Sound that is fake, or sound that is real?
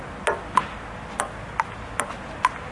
real